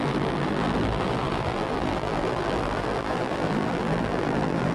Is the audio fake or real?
fake